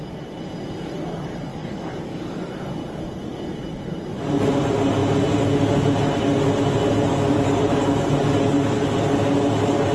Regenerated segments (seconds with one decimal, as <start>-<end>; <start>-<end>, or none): 1.5-2.5; 7.1-7.6